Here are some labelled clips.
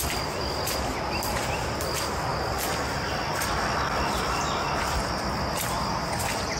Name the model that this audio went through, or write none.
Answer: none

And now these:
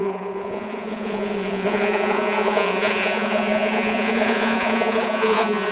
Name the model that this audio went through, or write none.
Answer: vocoder, Vocos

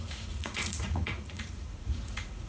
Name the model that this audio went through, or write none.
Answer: vocoder, Vocos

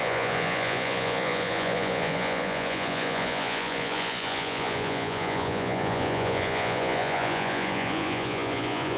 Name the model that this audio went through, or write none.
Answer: vocoder, Vocos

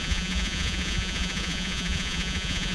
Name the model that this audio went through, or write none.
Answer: vocoder, Vocos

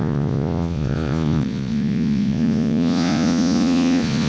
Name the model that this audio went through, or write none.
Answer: vocoder, Vocos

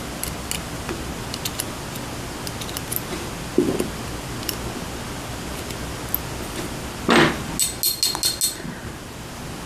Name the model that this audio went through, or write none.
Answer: none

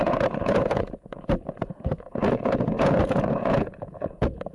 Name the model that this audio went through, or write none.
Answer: vocoder, Vocos